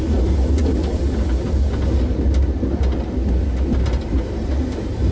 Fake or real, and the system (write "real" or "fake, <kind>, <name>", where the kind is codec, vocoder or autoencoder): real